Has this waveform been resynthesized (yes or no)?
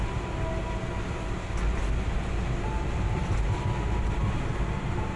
no